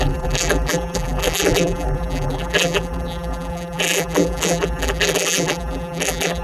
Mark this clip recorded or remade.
remade